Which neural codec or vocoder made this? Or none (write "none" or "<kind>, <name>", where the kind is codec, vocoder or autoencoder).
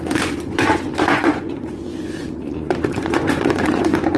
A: vocoder, Vocos